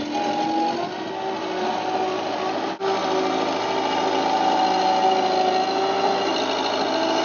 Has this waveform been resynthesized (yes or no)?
no